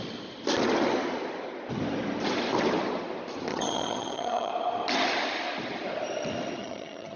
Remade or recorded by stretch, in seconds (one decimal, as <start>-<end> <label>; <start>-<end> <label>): 0.0-3.5 recorded; 3.5-4.5 remade; 4.5-6.6 recorded; 6.6-7.2 remade